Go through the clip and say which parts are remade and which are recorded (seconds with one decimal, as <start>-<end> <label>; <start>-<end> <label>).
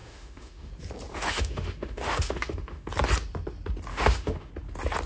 0.0-0.7 remade; 0.7-1.1 recorded; 1.1-2.9 remade; 2.9-3.9 recorded; 3.9-4.5 remade; 4.5-5.1 recorded